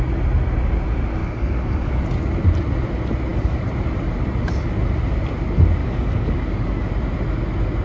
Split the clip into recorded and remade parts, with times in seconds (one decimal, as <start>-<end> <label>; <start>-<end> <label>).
0.0-1.2 recorded; 1.2-2.0 remade; 2.0-5.8 recorded; 5.8-6.9 remade; 6.9-7.8 recorded